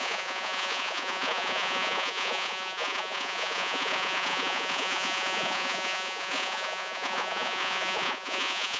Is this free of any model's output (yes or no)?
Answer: no